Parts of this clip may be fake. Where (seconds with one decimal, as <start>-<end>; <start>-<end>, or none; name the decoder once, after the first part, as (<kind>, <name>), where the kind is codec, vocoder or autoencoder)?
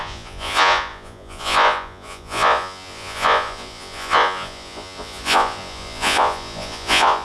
0.0-7.2 (vocoder, Vocos)